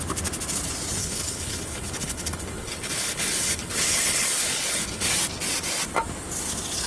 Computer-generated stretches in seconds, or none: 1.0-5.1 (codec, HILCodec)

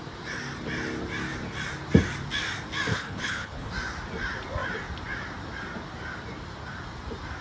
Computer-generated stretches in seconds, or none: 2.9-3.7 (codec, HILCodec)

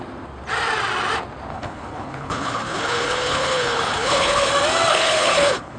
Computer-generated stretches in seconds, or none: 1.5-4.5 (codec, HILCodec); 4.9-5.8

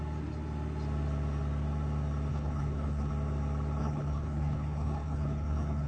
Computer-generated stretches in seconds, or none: 2.3-3.1 (codec, HILCodec); 3.8-5.9